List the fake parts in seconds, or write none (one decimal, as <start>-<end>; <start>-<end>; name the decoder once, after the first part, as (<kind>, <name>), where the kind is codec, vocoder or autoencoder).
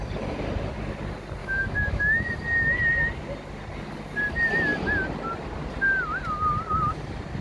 1.4-2.3 (autoencoder, DAC-VAE)